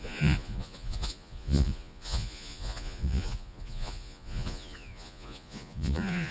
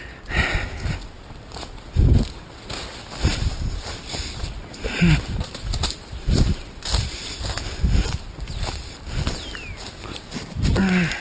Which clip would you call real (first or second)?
second